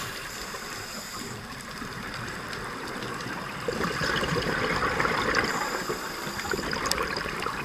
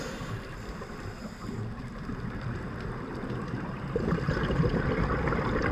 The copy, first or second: first